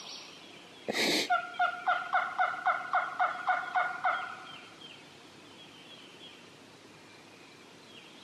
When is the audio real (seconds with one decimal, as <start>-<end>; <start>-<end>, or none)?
0.0-3.3; 5.4-8.2